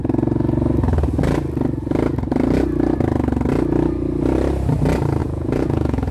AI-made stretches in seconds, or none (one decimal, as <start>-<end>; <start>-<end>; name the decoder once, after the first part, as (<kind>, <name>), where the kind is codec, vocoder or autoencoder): 5.2-6.1 (vocoder, Vocos)